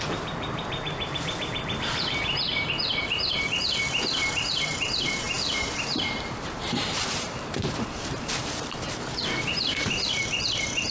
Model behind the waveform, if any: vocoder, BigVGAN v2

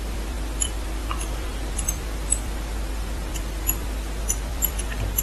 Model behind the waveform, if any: vocoder, BigVGAN v2